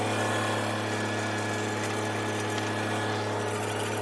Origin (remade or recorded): recorded